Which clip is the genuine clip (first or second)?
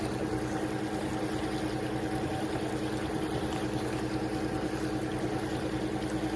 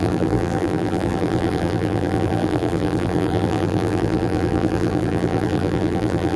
first